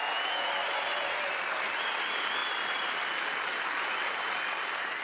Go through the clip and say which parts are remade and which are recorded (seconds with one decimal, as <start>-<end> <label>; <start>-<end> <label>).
0.0-0.5 remade; 0.5-5.0 recorded